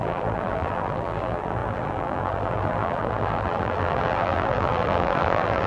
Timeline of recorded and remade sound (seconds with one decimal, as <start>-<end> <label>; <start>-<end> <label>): 0.0-5.7 remade